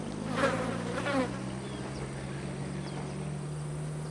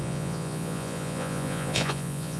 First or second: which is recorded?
first